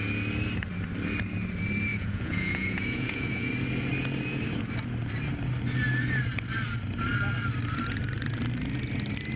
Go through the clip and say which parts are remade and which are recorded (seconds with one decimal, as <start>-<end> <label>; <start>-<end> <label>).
0.0-1.9 recorded; 1.9-3.5 remade; 3.5-9.4 recorded